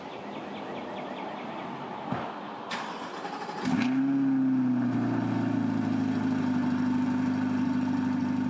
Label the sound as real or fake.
real